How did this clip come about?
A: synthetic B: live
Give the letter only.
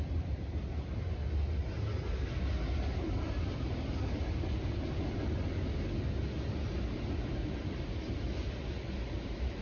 B